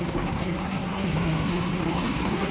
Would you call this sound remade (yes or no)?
yes